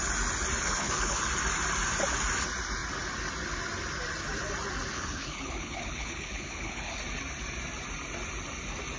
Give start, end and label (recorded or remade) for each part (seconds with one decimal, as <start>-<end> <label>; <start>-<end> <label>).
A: 0.0-0.6 recorded; 0.6-1.2 remade; 1.2-4.9 recorded; 4.9-7.0 remade; 7.0-9.0 recorded